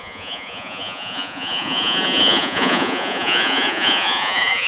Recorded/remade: remade